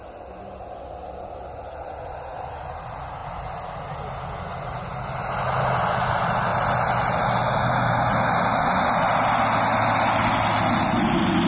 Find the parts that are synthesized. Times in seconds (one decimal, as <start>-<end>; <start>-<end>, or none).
none